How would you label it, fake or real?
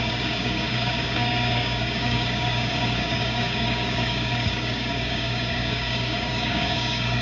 fake